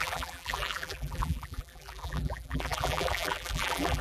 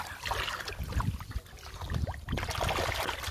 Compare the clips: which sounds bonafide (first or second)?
second